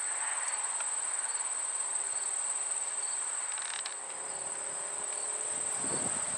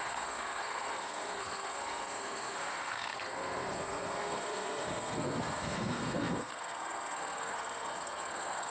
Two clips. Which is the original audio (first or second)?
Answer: first